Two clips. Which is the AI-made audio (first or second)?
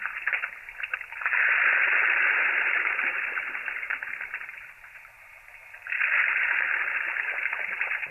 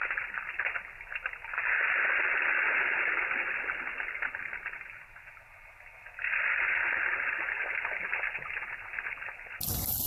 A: first